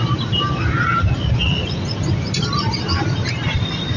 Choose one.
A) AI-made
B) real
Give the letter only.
B